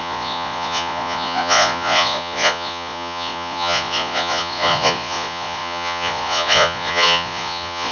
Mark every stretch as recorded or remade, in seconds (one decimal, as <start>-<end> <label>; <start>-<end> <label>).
0.0-7.9 remade